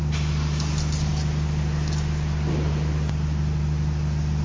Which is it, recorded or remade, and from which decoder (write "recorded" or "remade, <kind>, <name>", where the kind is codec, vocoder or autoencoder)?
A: recorded